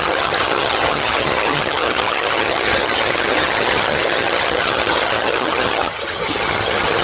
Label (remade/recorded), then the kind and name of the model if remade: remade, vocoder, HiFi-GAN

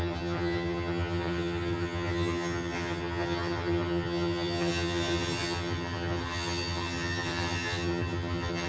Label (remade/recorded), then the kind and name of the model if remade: remade, vocoder, HiFi-GAN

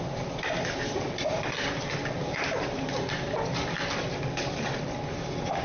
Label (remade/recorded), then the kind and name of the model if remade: recorded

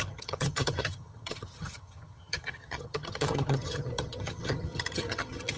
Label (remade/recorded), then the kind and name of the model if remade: remade, vocoder, HiFi-GAN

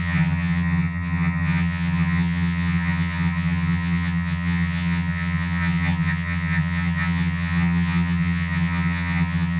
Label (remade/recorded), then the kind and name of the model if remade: remade, vocoder, HiFi-GAN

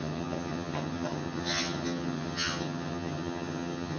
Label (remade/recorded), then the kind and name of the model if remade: remade, vocoder, HiFi-GAN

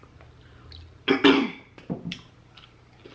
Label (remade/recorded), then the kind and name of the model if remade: recorded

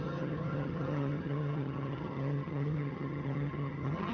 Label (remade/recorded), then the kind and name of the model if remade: remade, vocoder, HiFi-GAN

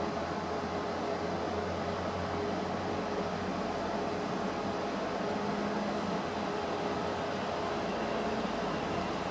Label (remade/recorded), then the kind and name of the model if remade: recorded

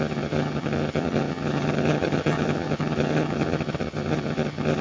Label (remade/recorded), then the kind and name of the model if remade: remade, vocoder, HiFi-GAN